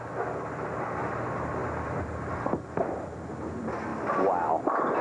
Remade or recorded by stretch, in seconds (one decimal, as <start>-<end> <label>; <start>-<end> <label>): 0.0-5.0 recorded